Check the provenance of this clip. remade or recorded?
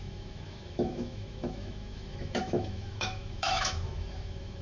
remade